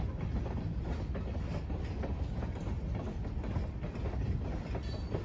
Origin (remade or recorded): recorded